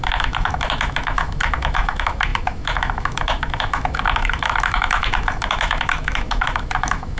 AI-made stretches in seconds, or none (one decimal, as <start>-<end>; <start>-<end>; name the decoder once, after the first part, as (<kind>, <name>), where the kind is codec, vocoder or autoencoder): 0.0-7.2 (autoencoder, DAC-VAE)